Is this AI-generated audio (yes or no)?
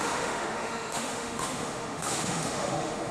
yes